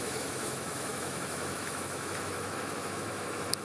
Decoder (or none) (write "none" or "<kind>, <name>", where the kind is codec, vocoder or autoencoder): autoencoder, DAC-VAE